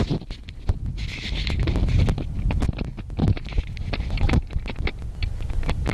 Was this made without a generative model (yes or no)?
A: yes